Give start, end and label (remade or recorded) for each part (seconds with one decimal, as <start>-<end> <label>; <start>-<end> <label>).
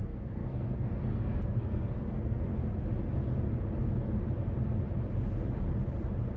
0.0-2.5 remade; 2.5-6.4 recorded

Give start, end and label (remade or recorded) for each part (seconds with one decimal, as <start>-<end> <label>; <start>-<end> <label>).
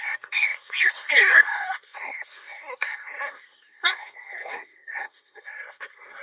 0.0-6.2 remade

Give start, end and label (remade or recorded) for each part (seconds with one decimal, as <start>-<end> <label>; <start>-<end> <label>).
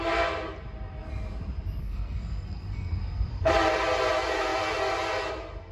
0.0-1.8 recorded; 1.8-3.5 remade; 3.5-5.7 recorded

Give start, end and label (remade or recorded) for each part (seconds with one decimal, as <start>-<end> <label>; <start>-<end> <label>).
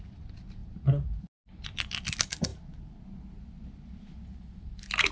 0.0-5.1 recorded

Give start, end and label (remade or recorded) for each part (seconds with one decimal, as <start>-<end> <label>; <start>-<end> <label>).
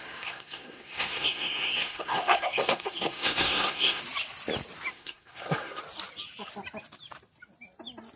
0.0-4.0 remade; 4.0-4.9 recorded; 4.9-5.8 remade; 5.8-8.2 recorded